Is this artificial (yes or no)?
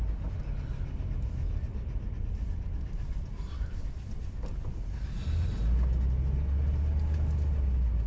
no